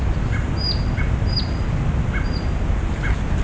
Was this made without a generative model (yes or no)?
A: yes